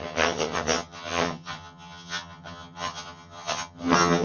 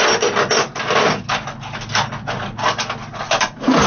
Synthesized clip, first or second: first